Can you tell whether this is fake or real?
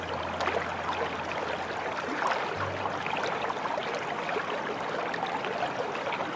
real